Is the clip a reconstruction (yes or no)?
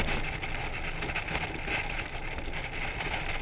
no